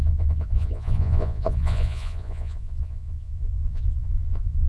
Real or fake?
fake